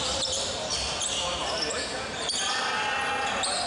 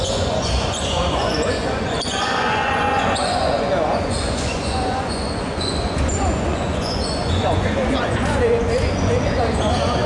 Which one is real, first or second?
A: first